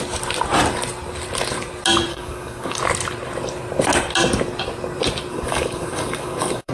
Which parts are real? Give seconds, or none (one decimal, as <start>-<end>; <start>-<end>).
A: 0.0-2.1; 2.8-5.3